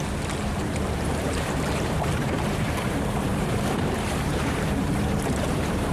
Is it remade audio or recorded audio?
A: remade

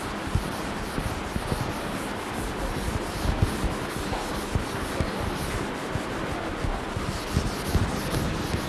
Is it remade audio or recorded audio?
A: recorded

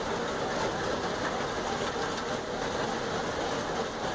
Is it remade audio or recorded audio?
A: recorded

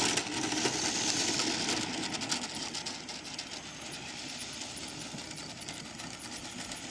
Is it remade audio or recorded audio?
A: recorded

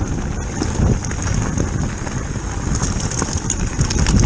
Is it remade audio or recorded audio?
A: recorded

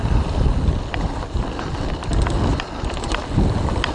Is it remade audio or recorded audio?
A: recorded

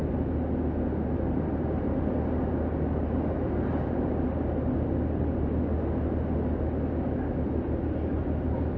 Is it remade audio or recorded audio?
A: recorded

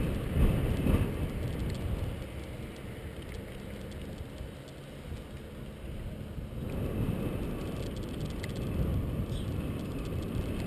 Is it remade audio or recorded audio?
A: recorded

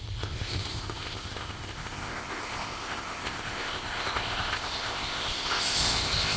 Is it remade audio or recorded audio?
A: remade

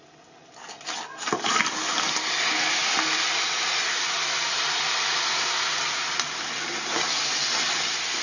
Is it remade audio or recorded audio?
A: recorded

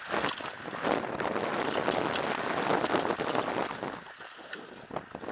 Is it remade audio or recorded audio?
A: recorded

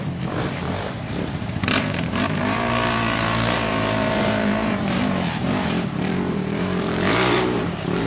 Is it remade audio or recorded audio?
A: remade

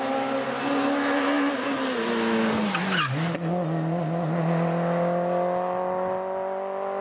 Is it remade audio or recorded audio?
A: recorded